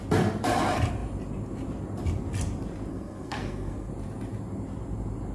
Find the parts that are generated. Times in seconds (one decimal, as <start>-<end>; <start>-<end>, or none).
2.9-3.9